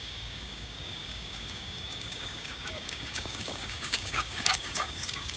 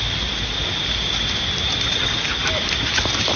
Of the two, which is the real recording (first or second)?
second